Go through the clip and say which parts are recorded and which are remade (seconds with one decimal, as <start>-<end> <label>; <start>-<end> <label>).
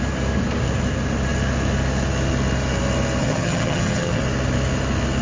0.0-3.2 recorded; 3.2-4.2 remade; 4.2-5.2 recorded